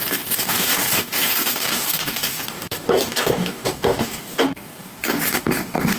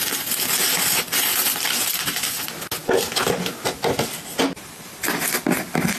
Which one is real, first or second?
second